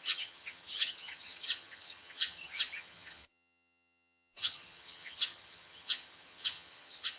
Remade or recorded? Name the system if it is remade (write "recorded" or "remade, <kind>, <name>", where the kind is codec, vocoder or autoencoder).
remade, vocoder, HiFi-GAN